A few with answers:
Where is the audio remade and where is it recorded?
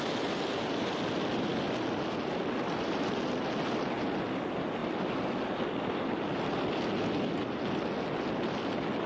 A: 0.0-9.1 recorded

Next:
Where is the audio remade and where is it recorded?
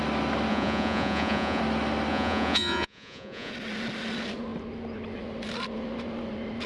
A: 0.0-0.5 recorded; 0.5-1.6 remade; 1.6-2.1 recorded; 2.1-3.5 remade; 3.5-6.7 recorded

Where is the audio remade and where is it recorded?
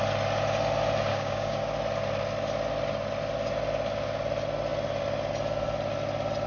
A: 0.0-1.1 recorded; 1.1-1.6 remade; 1.6-6.5 recorded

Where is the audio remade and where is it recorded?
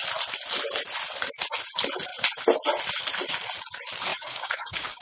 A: 0.0-4.1 recorded; 4.1-5.0 remade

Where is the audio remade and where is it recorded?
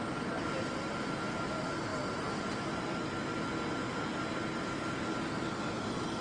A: 0.0-6.2 recorded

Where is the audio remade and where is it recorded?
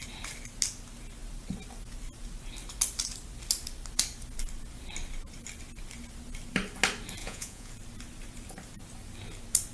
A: 0.0-7.2 recorded; 7.2-7.7 remade; 7.7-9.7 recorded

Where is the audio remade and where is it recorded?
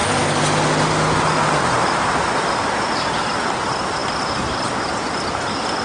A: 0.0-5.8 recorded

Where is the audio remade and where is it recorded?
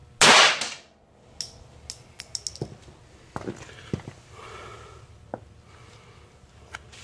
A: 0.0-7.0 recorded